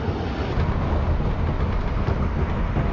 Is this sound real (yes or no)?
yes